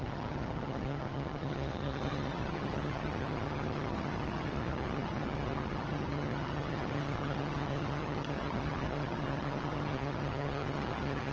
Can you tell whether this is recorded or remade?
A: remade